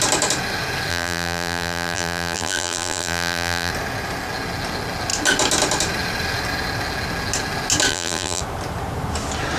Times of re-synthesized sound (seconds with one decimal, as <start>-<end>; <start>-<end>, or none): 0.9-3.7; 7.9-8.4